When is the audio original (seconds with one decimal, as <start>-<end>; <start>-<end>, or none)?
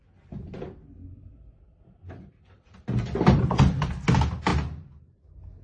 3.4-5.6